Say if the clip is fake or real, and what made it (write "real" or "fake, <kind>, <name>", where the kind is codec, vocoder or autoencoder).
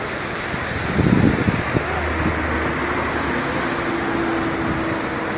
real